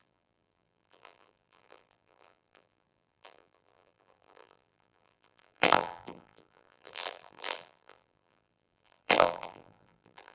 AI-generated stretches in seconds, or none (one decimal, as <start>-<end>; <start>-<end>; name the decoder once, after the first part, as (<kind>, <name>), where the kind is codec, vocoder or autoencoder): 0.0-10.3 (vocoder, BigVGAN v2)